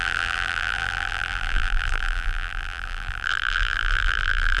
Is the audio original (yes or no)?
no